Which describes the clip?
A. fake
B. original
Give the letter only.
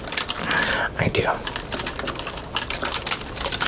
B